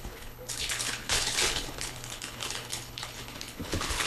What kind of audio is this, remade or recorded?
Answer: remade